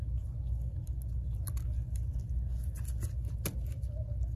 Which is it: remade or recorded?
recorded